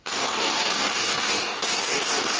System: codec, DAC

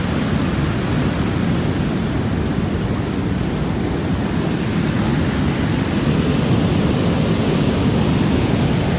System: none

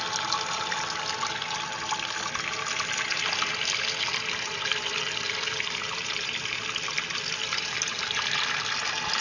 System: none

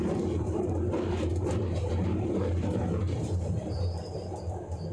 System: none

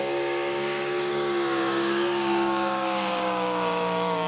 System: codec, DAC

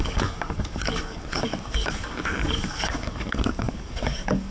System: codec, DAC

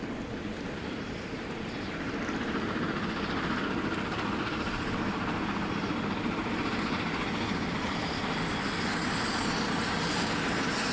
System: none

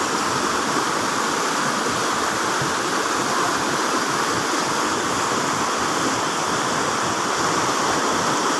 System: none